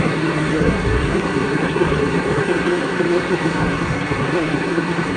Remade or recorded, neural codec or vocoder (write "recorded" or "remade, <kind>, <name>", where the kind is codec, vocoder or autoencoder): remade, codec, SNAC